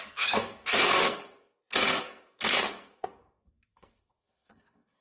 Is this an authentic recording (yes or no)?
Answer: no